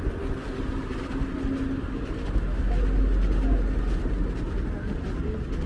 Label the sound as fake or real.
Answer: real